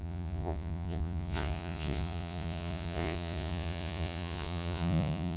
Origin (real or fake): fake